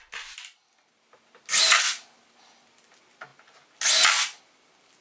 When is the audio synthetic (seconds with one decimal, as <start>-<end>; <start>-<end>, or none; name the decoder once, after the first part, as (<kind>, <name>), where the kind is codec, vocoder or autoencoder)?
none